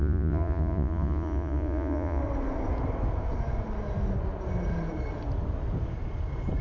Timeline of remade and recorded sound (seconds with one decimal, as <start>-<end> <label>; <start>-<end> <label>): 0.0-2.2 remade; 2.2-6.6 recorded